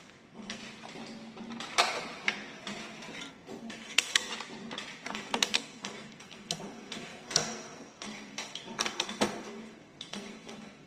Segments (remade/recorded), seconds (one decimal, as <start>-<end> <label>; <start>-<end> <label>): 0.0-0.6 remade; 0.6-3.3 recorded; 3.3-4.3 remade; 4.3-5.1 recorded; 5.1-10.9 remade